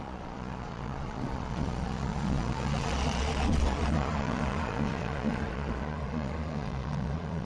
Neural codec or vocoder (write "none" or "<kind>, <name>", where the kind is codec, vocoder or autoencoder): vocoder, Vocos